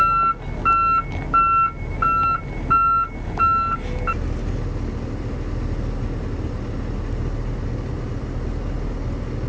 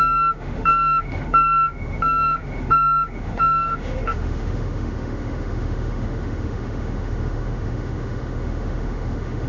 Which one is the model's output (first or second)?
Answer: second